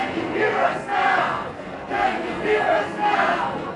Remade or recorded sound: remade